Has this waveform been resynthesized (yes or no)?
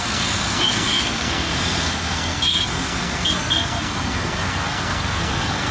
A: yes